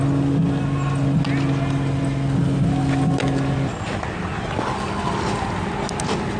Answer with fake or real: real